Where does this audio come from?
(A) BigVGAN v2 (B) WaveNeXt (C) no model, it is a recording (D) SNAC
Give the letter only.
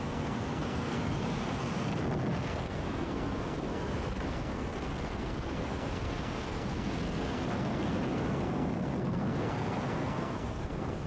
D